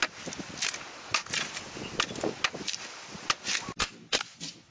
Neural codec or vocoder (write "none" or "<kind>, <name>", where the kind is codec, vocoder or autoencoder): none